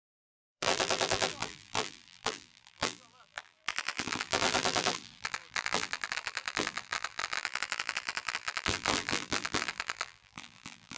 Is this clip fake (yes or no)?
yes